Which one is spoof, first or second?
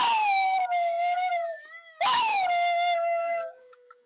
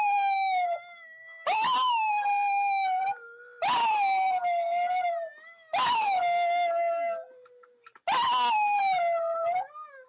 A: first